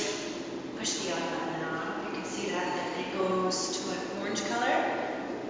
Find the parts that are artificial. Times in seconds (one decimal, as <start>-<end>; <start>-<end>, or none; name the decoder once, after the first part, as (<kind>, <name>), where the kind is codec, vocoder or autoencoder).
none